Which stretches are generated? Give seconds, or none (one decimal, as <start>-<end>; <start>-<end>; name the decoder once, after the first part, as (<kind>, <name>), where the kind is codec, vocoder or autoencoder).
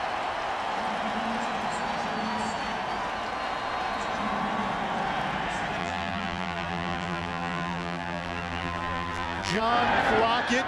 5.8-9.6 (vocoder, BigVGAN v2)